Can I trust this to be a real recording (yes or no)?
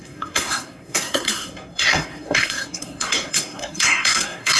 no